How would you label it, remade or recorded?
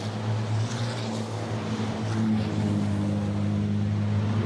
recorded